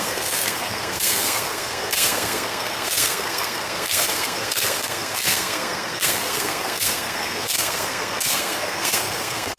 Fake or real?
fake